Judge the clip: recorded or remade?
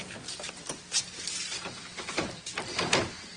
recorded